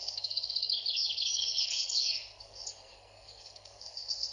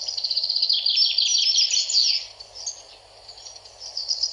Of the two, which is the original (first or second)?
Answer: second